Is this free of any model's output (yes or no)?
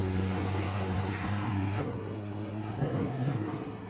no